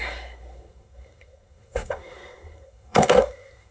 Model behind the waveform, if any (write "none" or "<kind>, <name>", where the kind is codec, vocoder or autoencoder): codec, SNAC